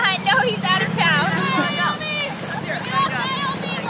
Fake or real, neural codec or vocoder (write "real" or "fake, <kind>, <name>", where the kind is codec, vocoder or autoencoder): real